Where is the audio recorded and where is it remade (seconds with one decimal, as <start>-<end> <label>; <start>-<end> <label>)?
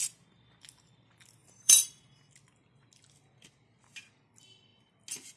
0.0-1.4 recorded; 1.4-2.1 remade; 2.1-5.4 recorded